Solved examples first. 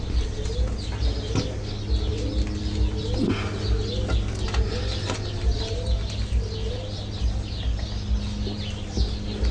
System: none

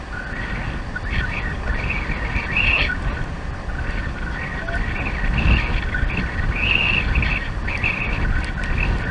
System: none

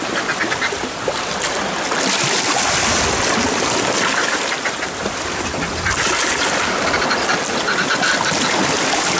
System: none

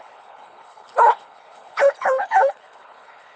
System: codec, HILCodec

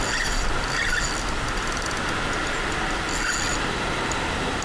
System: none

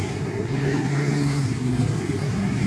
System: codec, SNAC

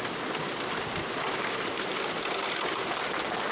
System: none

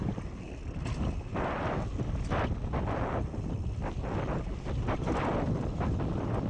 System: none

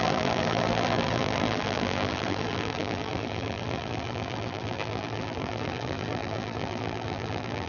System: vocoder, BigVGAN v2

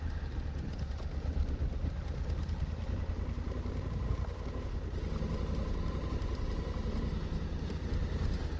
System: none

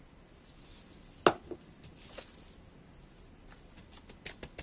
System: none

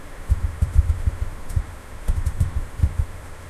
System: autoencoder, DAC-VAE